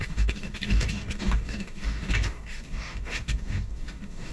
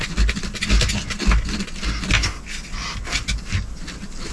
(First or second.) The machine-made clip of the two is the first